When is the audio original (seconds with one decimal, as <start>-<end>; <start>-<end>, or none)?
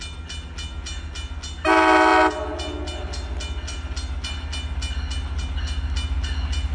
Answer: 0.0-6.7